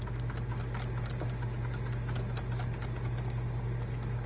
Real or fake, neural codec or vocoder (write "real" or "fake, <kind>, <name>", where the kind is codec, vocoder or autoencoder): real